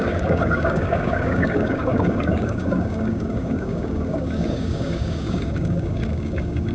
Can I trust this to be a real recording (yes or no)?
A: no